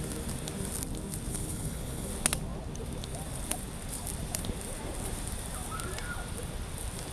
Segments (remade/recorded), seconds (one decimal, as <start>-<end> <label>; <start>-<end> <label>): 0.0-1.3 recorded; 1.3-2.1 remade; 2.1-7.1 recorded